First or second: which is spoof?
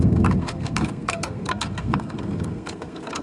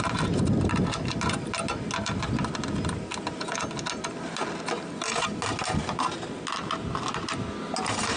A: first